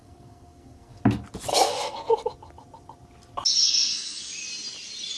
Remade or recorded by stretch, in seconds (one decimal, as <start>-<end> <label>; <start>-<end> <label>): 0.0-1.0 remade; 1.0-1.5 recorded; 1.5-2.1 remade; 2.1-3.6 recorded; 3.6-4.3 remade; 4.3-5.2 recorded